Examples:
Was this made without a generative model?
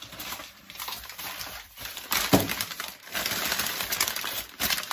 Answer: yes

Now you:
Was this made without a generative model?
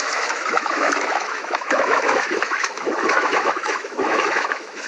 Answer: no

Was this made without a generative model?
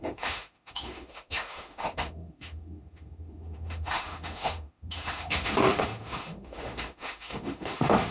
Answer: no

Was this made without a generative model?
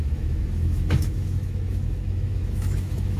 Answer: no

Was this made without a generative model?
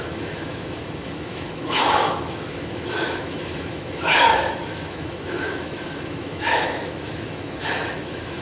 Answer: no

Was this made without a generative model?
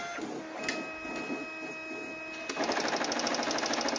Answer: yes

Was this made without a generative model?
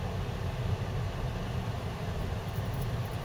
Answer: yes